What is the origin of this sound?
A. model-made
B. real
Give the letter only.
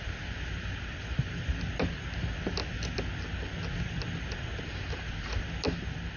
B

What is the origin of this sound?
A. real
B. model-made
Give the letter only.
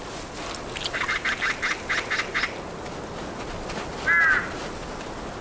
A